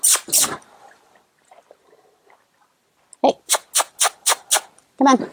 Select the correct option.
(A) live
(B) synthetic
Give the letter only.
A